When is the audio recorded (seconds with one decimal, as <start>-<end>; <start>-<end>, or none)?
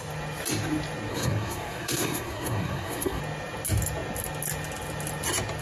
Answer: 0.0-1.1; 3.2-5.6